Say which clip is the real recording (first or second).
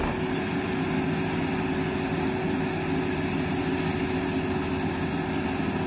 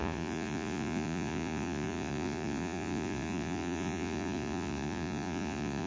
first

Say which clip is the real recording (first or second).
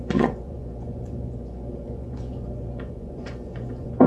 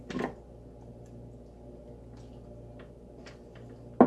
second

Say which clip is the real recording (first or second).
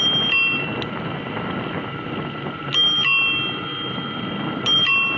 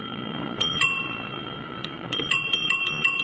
first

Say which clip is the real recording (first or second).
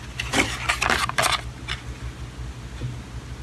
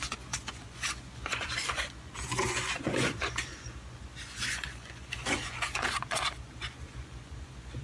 first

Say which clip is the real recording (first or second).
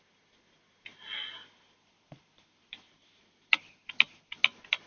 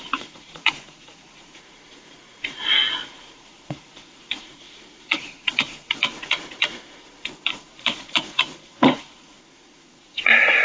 first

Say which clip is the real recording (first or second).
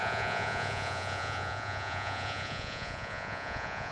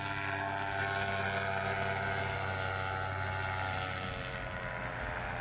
second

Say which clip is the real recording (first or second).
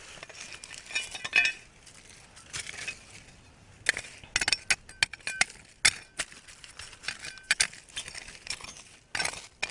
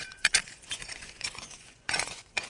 first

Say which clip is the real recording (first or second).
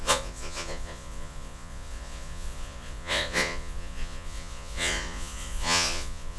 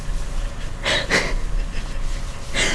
second